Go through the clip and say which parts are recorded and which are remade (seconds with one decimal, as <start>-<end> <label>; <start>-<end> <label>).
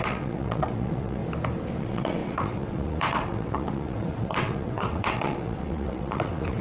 0.0-1.2 remade; 1.2-1.8 recorded; 1.8-6.6 remade